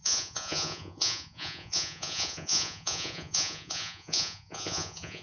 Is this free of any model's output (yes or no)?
no